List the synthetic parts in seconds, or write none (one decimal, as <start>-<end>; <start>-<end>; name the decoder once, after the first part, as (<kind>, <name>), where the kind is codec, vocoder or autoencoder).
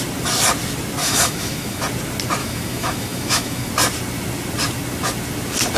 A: 1.0-1.8 (autoencoder, DAC-VAE); 2.4-3.7